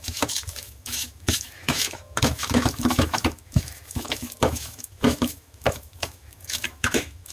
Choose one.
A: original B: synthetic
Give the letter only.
B